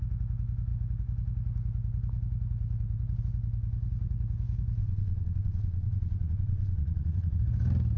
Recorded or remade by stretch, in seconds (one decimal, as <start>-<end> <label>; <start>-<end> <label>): 0.0-4.8 recorded; 4.8-7.4 remade; 7.4-8.0 recorded